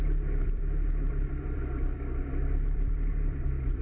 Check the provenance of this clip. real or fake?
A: fake